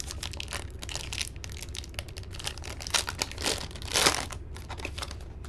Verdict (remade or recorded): recorded